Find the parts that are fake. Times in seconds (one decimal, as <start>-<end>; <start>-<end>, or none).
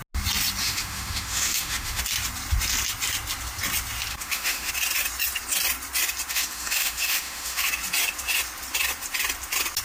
0.6-2.0; 4.1-4.7; 6.3-7.7